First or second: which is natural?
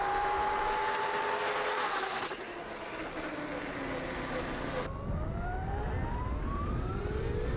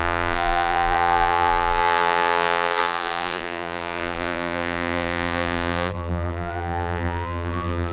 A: first